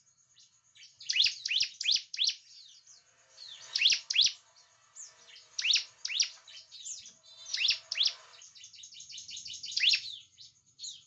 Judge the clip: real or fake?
real